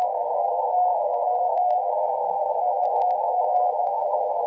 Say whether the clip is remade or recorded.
remade